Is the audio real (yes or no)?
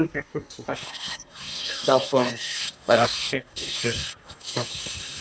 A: no